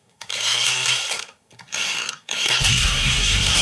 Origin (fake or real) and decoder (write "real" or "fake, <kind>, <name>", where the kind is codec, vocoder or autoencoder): fake, codec, SNAC